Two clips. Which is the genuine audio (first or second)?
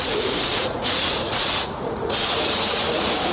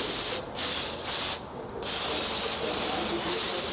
second